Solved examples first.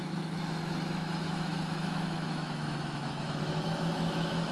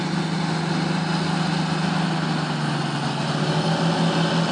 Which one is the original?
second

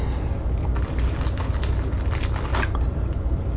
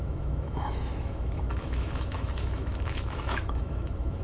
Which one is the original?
first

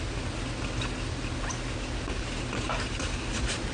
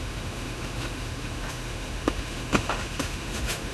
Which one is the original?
first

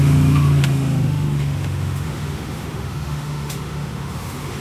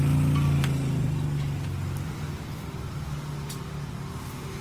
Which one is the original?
second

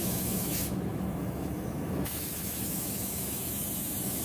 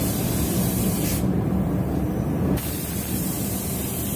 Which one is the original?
second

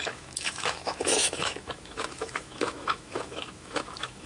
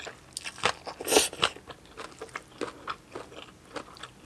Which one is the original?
second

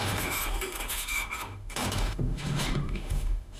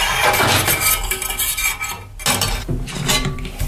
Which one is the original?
second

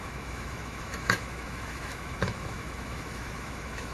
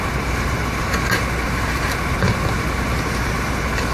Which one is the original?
second